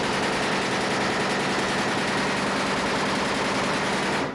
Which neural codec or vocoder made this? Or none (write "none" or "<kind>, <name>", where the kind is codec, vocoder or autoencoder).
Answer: none